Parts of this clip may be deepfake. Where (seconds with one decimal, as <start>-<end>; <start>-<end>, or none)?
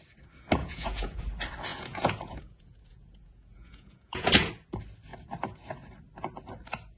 0.6-1.2; 1.7-4.5